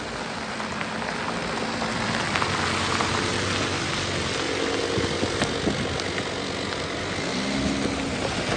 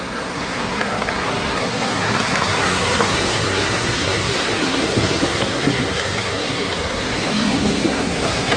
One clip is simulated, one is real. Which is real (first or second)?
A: first